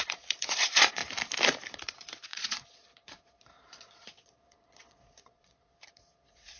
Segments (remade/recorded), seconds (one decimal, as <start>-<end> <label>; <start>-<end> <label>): 0.0-1.0 remade; 1.0-1.7 recorded; 1.7-6.6 remade